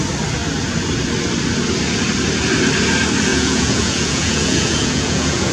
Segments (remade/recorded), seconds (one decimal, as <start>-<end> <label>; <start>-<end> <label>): 0.0-3.3 recorded; 3.3-5.5 remade